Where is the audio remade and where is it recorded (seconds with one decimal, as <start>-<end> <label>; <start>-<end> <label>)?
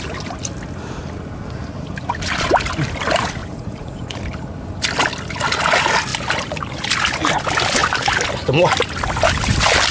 0.0-3.4 recorded; 3.4-4.2 remade; 4.2-9.9 recorded